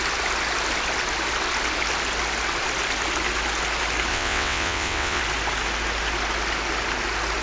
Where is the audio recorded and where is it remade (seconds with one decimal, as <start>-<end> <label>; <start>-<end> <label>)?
0.0-4.1 recorded; 4.1-5.2 remade; 5.2-7.4 recorded